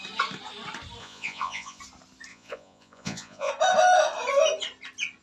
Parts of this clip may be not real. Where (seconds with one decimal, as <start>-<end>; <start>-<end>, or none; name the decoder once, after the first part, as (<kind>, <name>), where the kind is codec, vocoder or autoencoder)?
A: 1.0-1.8 (vocoder, Vocos); 2.3-3.5